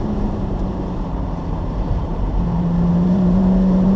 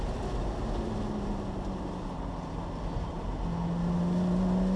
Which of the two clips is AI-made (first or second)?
first